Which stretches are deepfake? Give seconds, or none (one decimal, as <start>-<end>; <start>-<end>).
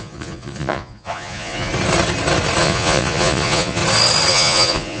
0.0-1.7; 2.6-3.8; 4.3-5.0